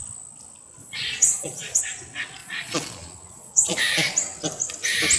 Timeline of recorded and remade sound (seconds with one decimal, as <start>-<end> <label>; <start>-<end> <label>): 0.0-0.8 recorded; 0.8-1.8 remade; 1.8-2.4 recorded; 2.4-3.8 remade; 3.8-5.2 recorded